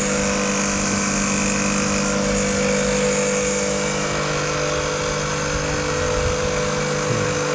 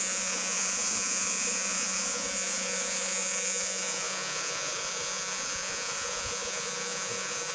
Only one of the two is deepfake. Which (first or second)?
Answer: second